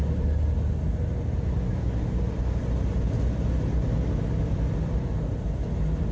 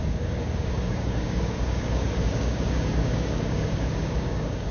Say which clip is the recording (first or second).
first